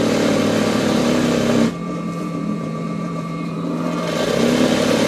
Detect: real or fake fake